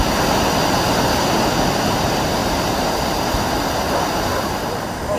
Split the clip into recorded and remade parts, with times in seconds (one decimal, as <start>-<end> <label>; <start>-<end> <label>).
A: 0.0-5.2 recorded